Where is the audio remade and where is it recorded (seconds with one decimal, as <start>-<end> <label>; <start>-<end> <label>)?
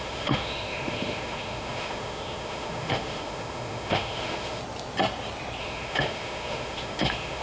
0.0-4.6 remade; 4.6-5.6 recorded; 5.6-7.4 remade